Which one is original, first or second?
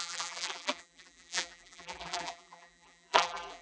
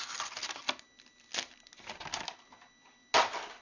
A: second